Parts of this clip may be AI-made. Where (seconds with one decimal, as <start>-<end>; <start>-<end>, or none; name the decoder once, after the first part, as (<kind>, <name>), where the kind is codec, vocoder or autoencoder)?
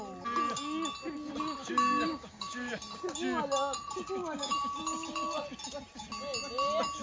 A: 1.6-2.7 (codec, DAC); 4.2-4.8